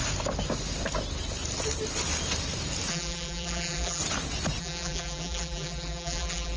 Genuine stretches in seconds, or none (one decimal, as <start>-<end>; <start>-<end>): 0.0-2.9; 4.0-4.6